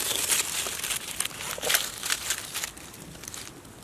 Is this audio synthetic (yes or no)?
no